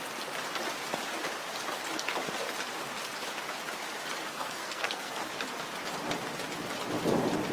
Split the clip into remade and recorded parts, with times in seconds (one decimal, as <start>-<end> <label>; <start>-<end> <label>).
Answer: 0.0-4.3 recorded; 4.3-5.2 remade; 5.2-7.5 recorded